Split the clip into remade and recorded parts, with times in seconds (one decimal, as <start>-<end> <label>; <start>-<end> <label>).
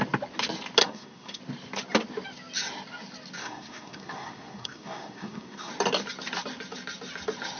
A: 0.0-0.8 recorded; 0.8-1.4 remade; 1.4-3.4 recorded; 3.4-5.7 remade; 5.7-7.6 recorded